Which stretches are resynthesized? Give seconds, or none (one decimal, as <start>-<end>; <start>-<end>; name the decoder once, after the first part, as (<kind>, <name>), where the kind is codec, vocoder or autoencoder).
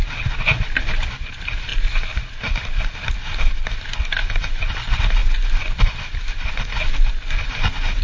none